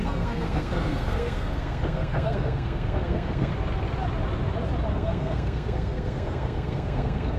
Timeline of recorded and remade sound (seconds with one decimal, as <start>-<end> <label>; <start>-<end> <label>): 0.0-3.5 remade; 3.5-4.9 recorded; 4.9-7.4 remade